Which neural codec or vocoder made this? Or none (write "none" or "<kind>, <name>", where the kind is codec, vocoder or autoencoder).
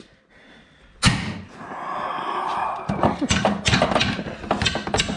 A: none